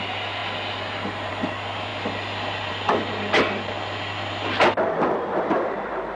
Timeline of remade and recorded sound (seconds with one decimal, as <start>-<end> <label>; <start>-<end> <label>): 0.0-6.2 recorded